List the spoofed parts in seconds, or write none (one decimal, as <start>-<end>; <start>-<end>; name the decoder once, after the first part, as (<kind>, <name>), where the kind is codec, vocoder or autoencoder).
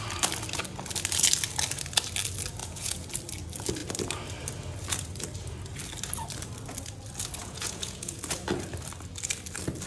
2.6-3.1 (vocoder, Vocos); 7.4-8.2